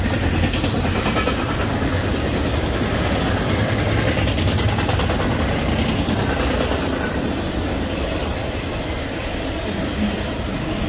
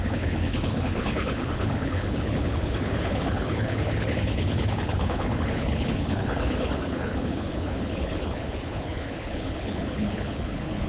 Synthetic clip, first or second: second